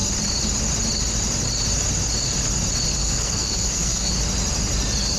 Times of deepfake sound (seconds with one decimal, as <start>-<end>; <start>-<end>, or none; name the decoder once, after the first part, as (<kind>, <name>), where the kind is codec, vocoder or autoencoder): 3.0-4.1 (codec, SNAC)